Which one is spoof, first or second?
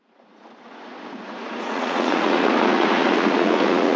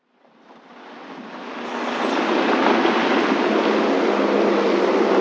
first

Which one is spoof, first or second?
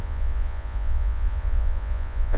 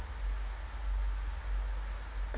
first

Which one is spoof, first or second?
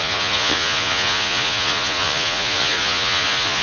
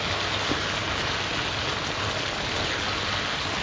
first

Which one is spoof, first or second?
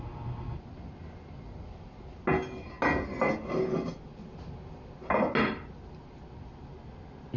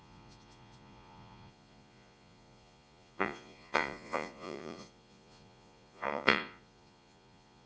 second